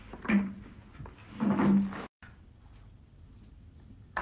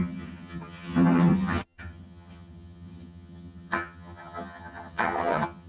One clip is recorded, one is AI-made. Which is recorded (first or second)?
first